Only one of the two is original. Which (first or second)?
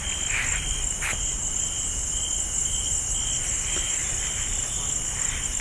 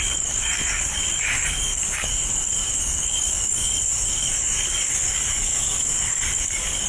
first